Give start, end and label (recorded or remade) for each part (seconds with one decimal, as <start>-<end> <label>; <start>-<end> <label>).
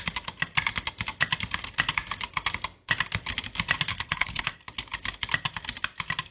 0.0-3.9 recorded; 3.9-4.5 remade; 4.5-6.3 recorded